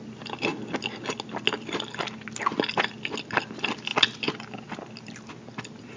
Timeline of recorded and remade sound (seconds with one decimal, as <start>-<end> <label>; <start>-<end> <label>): 0.0-6.0 recorded

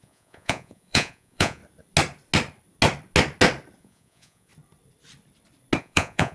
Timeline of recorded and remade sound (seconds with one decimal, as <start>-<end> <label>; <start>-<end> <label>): 0.0-1.6 remade; 1.6-3.8 recorded; 3.8-4.5 remade; 4.5-5.8 recorded; 5.8-6.3 remade

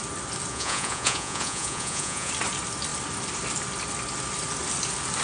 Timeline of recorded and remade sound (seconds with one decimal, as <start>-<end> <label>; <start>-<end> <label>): 0.0-0.5 recorded; 0.5-2.3 remade; 2.3-5.2 recorded

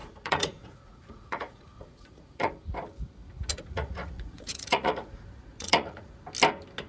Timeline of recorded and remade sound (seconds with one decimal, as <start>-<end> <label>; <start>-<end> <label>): 0.0-2.5 remade; 2.5-3.5 recorded; 3.5-6.2 remade; 6.2-6.9 recorded

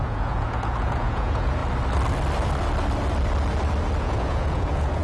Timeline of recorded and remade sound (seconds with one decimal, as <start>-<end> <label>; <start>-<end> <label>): 0.0-1.6 remade; 1.6-4.0 recorded; 4.0-5.0 remade

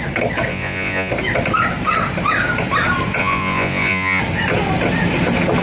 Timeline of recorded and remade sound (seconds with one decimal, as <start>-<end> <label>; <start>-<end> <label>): 0.0-0.5 recorded; 0.5-1.1 remade; 1.1-3.2 recorded; 3.2-4.2 remade; 4.2-5.6 recorded

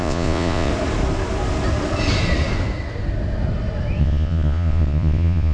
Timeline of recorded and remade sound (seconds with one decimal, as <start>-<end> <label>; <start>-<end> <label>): 0.0-0.7 remade; 0.7-4.0 recorded; 4.0-5.5 remade

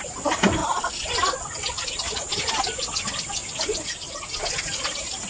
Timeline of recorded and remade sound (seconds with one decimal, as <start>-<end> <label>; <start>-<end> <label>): 0.0-5.3 recorded